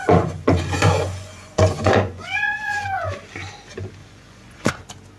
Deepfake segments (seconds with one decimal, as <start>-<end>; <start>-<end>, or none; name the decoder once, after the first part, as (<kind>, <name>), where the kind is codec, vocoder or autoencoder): 0.0-3.1 (vocoder, Vocos); 4.0-4.8